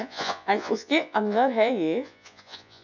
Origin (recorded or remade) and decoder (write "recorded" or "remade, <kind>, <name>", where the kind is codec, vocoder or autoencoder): remade, vocoder, Vocos